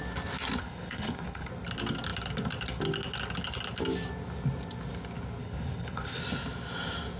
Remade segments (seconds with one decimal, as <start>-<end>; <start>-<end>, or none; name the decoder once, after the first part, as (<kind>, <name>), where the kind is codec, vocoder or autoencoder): 0.6-1.5 (codec, HILCodec); 5.4-6.2